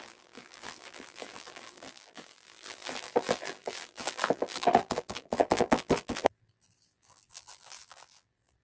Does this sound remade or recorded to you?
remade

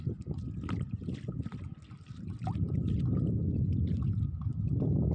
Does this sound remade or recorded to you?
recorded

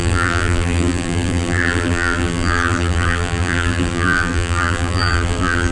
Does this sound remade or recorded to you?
remade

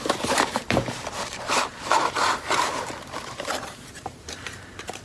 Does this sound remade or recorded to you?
remade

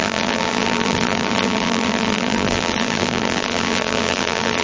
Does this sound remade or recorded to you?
remade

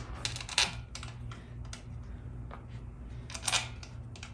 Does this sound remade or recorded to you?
recorded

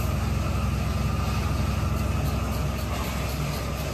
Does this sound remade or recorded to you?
recorded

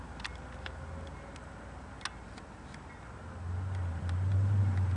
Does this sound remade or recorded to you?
recorded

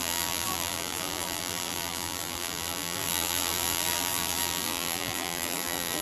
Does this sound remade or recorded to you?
remade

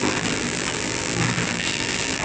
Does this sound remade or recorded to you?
remade